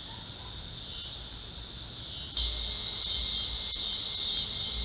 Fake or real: real